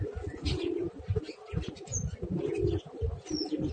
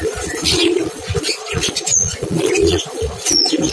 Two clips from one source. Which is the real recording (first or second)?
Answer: first